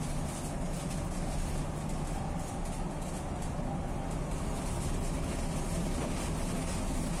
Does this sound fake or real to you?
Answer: real